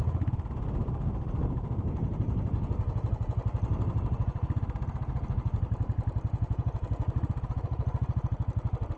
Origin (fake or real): real